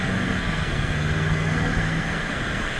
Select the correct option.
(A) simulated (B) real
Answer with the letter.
A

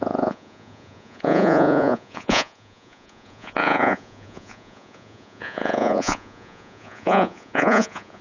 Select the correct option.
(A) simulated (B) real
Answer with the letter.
A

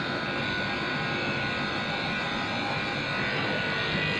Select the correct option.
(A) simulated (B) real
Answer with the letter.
B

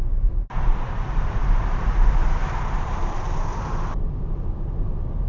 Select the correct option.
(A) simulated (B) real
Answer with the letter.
A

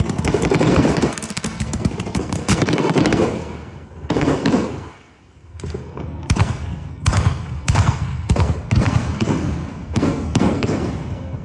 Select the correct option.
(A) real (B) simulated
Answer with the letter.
B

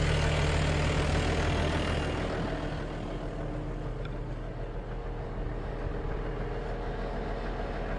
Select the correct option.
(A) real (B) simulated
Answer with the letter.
A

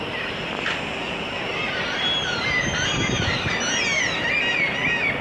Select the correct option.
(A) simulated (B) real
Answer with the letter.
B